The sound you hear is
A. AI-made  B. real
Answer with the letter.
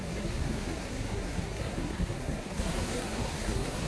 A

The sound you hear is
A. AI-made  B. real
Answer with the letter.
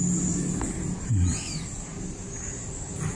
B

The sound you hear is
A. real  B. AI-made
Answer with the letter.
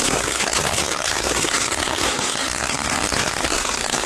B